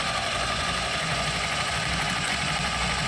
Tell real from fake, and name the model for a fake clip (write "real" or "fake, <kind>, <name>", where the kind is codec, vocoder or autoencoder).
fake, vocoder, Vocos